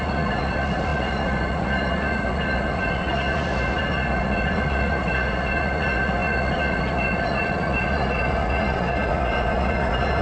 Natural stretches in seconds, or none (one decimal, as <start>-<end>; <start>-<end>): none